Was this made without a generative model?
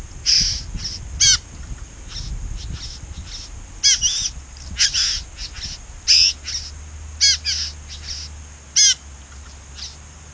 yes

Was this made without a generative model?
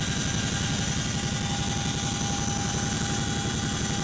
yes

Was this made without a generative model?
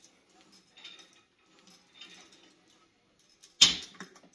yes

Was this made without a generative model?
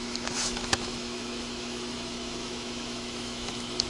no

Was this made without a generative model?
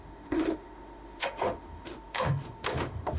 no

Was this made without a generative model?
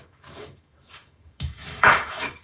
no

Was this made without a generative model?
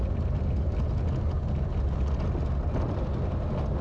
yes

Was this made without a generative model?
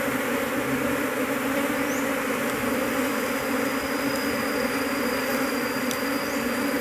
yes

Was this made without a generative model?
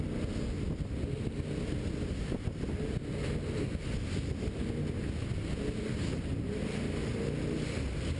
yes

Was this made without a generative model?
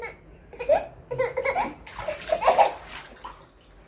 yes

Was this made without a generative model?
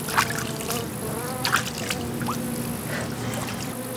yes